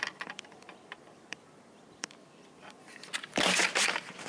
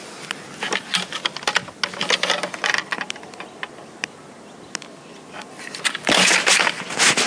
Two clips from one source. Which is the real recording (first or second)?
second